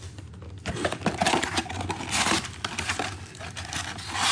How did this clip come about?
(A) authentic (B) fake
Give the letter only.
A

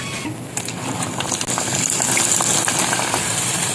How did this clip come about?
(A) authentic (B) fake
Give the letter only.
A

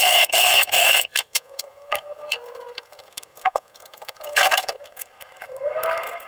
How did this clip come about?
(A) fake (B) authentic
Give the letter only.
A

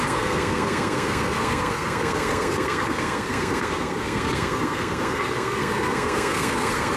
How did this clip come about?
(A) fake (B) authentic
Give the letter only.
A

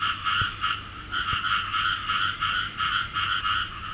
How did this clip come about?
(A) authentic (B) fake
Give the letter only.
A